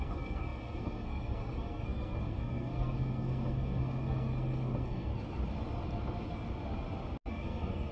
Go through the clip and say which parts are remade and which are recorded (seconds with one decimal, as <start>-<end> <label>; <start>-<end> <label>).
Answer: 0.0-5.1 remade; 5.1-7.3 recorded; 7.3-7.9 remade